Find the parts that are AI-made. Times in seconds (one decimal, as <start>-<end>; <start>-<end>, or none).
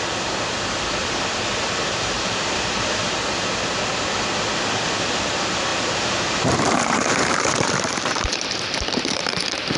1.0-2.9; 5.7-9.8